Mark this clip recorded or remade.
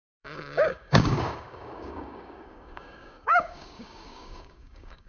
remade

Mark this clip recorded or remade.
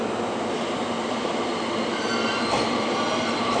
recorded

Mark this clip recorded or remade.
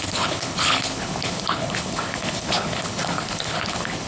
remade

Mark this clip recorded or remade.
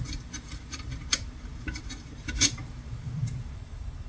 remade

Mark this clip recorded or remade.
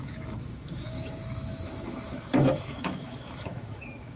remade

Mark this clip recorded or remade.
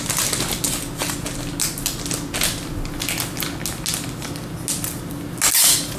recorded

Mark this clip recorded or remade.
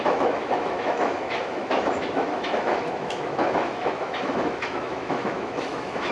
remade